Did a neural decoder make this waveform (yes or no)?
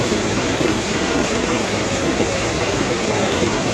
yes